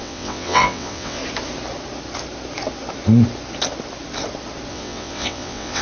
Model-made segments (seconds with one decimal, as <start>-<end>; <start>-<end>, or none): 0.0-1.2; 4.7-5.8